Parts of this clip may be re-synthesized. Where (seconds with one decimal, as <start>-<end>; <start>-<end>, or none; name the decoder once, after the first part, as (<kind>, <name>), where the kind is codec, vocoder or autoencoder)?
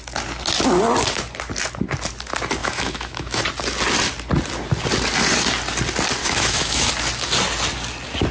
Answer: 2.6-3.4 (autoencoder, DAC-VAE); 6.2-6.9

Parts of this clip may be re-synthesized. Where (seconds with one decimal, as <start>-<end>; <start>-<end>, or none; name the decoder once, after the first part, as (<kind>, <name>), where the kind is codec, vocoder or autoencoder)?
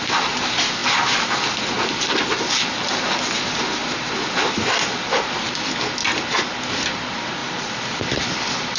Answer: 7.4-8.8 (vocoder, BigVGAN v2)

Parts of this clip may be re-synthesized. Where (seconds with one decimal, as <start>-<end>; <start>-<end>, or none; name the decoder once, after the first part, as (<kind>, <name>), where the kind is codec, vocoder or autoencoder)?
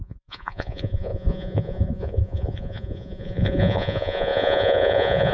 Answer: 0.0-5.3 (vocoder, Vocos)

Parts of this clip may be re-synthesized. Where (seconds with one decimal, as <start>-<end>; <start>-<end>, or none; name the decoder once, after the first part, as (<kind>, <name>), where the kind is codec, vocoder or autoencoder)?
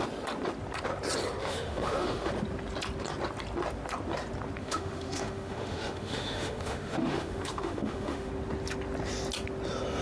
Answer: 1.4-2.3 (autoencoder, DAC-VAE); 4.6-8.3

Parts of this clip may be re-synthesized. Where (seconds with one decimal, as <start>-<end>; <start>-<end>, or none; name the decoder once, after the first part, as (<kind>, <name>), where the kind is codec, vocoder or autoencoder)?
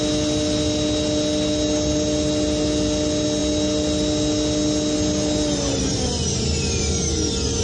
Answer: none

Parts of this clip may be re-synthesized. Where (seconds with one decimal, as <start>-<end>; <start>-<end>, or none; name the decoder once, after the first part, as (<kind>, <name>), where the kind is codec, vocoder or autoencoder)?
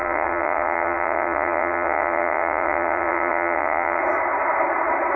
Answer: 0.0-4.0 (vocoder, WaveNeXt)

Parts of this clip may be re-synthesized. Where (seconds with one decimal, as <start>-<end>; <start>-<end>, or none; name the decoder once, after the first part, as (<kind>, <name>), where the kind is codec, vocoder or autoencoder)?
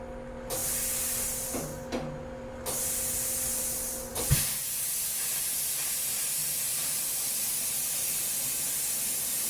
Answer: 4.1-4.7 (vocoder, BigVGAN v2); 6.4-7.0